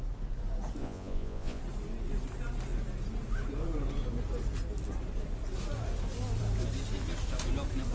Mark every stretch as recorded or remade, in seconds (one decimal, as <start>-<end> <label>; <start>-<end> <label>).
0.0-0.8 recorded; 0.8-1.6 remade; 1.6-7.9 recorded